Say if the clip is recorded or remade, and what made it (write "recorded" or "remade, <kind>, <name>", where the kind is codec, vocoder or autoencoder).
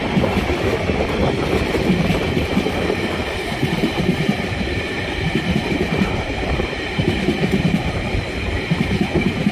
remade, vocoder, BigVGAN v2